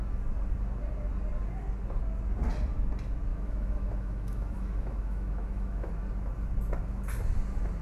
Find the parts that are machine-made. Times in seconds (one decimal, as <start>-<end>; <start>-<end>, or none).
3.3-5.9